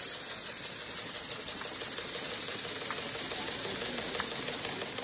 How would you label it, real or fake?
real